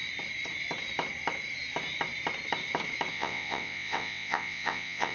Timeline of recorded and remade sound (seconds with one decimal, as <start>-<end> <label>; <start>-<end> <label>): 0.0-3.1 recorded; 3.1-5.1 remade